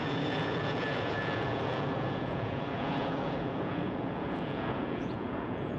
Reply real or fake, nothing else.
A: fake